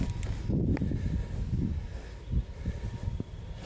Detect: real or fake real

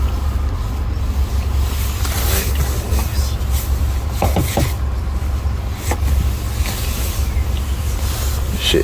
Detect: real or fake real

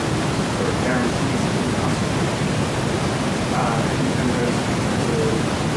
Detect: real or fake fake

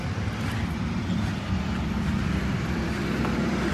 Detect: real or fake fake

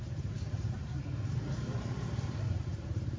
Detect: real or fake fake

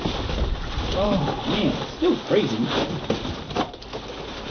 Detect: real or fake fake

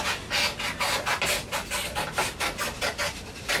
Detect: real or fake real